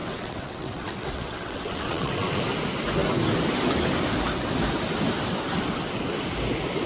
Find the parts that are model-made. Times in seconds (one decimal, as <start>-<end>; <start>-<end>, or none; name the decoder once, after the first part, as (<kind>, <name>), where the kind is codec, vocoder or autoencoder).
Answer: 0.0-2.4 (vocoder, WaveNeXt)